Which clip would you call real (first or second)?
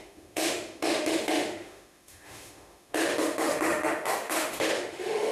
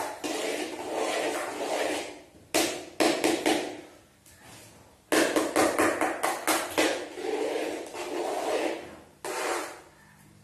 second